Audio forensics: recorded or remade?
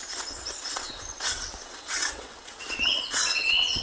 remade